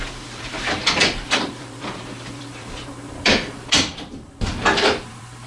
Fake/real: fake